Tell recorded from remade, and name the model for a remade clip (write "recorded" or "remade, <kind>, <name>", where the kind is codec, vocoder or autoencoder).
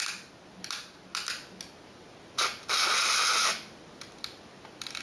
recorded